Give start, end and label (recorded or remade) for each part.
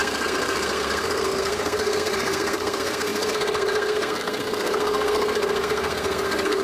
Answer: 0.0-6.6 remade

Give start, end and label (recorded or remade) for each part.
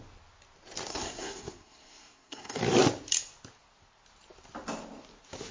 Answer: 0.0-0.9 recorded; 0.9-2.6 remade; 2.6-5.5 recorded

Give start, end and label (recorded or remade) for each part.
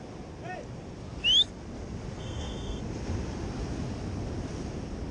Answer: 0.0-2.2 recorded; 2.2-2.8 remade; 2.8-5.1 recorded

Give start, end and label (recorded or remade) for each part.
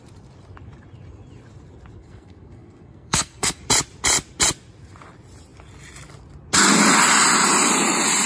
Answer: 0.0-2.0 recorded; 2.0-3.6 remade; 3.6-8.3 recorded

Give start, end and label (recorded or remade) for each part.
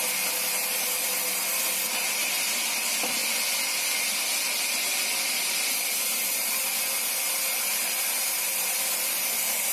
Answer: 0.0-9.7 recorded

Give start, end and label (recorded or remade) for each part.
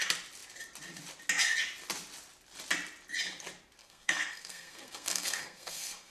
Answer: 0.0-3.8 recorded; 3.8-6.1 remade